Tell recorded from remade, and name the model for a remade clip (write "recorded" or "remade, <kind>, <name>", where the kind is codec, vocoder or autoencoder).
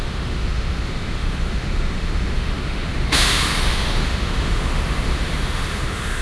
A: remade, autoencoder, DAC-VAE